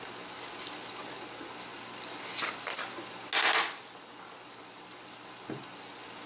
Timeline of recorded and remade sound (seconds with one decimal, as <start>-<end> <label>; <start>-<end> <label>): 0.0-6.3 recorded

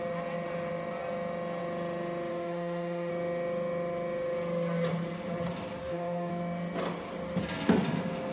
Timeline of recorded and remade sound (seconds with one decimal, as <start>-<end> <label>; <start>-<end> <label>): 0.0-2.3 recorded; 2.3-3.1 remade; 3.1-5.8 recorded; 5.8-6.3 remade; 6.3-8.3 recorded

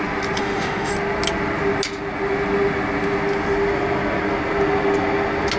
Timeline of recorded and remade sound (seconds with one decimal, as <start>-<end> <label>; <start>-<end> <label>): 0.0-0.4 recorded; 0.4-0.9 remade; 0.9-5.6 recorded

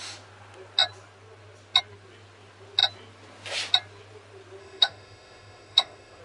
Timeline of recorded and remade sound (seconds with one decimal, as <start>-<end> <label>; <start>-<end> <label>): 0.0-4.6 recorded; 4.6-6.2 remade

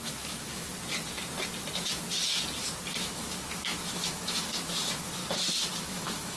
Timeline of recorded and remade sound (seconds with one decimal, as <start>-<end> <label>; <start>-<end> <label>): 0.0-0.7 remade; 0.7-3.0 recorded; 3.0-5.2 remade; 5.2-5.8 recorded; 5.8-6.4 remade